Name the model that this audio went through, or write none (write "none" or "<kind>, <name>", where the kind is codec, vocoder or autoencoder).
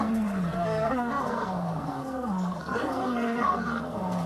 codec, SNAC